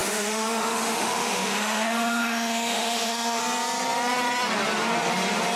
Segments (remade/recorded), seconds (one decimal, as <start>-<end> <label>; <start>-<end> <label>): 0.0-3.4 remade; 3.4-5.6 recorded